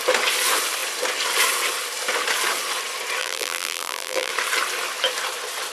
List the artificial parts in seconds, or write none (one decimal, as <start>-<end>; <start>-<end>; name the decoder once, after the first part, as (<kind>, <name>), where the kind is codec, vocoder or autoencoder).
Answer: 3.2-4.3 (vocoder, BigVGAN v2)